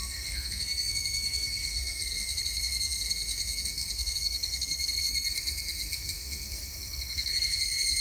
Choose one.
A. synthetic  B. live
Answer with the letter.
A